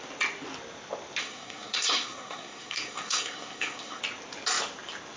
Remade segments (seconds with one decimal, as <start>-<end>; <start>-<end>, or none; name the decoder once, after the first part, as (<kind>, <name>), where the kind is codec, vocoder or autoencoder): 1.2-4.0 (codec, SNAC)